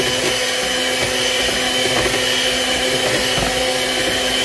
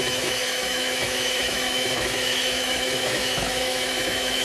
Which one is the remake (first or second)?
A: second